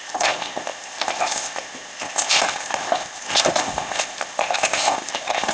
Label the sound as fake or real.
fake